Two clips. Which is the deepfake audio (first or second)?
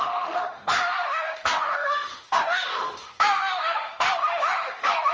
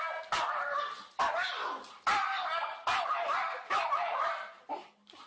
first